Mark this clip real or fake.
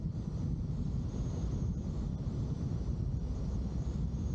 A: real